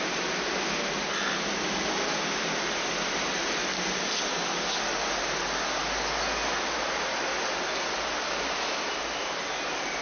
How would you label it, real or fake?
real